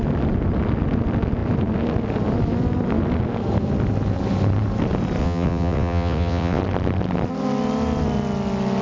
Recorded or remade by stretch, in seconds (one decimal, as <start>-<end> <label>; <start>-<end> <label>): 0.0-5.2 recorded; 5.2-6.6 remade; 6.6-8.8 recorded